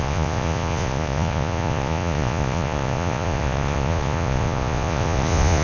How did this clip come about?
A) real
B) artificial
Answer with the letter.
B